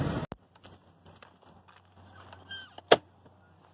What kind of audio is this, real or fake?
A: real